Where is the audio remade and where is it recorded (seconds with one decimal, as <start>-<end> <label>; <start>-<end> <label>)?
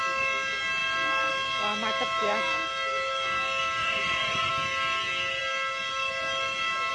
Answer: 0.0-3.8 recorded; 3.8-4.5 remade; 4.5-6.9 recorded